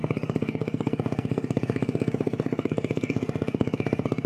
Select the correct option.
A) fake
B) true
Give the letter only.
A